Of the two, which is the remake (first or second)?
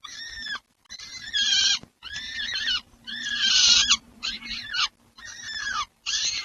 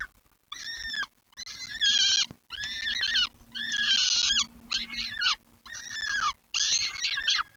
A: first